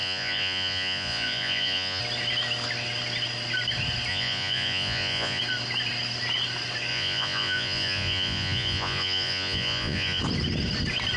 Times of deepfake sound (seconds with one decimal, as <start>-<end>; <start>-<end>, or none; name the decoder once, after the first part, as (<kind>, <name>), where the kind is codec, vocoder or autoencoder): 0.0-2.0 (vocoder, Vocos); 4.1-5.4; 6.9-10.2